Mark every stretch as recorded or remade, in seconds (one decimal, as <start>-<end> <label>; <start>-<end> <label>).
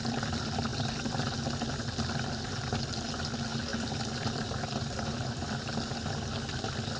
0.0-3.7 recorded; 3.7-5.6 remade; 5.6-7.0 recorded